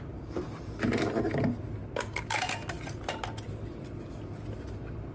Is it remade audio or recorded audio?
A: recorded